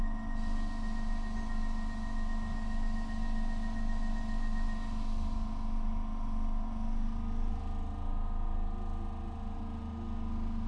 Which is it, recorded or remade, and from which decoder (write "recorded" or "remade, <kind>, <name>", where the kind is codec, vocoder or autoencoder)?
recorded